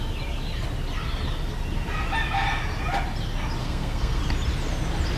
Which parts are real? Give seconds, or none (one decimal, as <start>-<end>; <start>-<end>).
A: 0.0-3.6; 4.2-5.2